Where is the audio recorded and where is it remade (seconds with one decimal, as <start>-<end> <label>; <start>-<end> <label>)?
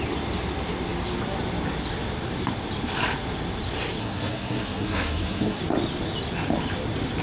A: 0.0-4.0 recorded; 4.0-5.6 remade; 5.6-7.2 recorded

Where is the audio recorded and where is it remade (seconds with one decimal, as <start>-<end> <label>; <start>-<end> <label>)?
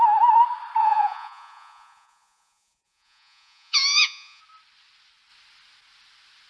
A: 0.0-0.8 recorded; 0.8-4.4 remade; 4.4-6.5 recorded